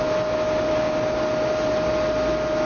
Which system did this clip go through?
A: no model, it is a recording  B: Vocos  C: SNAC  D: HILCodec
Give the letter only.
A